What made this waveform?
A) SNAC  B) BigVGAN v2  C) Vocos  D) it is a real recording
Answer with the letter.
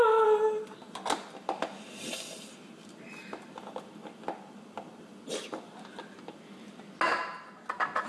D